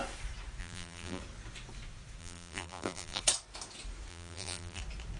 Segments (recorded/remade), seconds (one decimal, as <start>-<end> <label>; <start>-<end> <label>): 0.0-0.6 recorded; 0.6-1.2 remade; 1.2-2.2 recorded; 2.2-3.2 remade; 3.2-4.1 recorded; 4.1-4.8 remade; 4.8-5.2 recorded